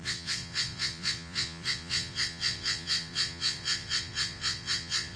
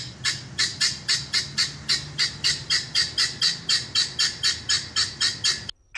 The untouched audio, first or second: second